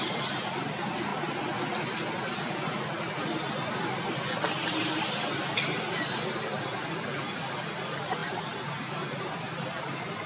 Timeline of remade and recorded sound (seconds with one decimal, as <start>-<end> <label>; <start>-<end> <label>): 0.0-10.3 recorded